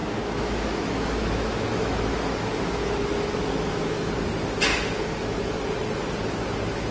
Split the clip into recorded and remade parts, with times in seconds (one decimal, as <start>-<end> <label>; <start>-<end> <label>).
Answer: 0.0-4.1 remade; 4.1-4.7 recorded; 4.7-5.7 remade; 5.7-6.9 recorded